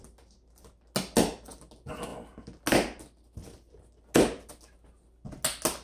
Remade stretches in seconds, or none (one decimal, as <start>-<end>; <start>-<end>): none